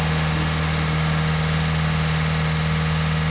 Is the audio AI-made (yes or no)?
no